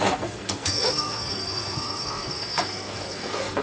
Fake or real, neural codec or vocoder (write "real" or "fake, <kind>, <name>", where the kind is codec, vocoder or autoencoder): fake, codec, SNAC